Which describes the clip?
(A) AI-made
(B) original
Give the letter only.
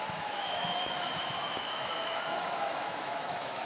A